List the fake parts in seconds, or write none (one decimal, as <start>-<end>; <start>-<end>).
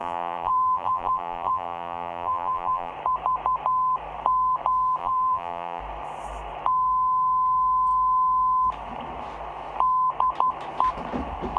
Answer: 0.0-2.9; 5.0-5.8